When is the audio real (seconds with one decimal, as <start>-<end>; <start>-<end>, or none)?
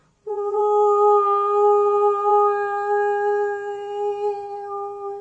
0.6-5.2